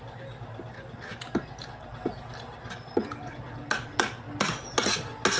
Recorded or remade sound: recorded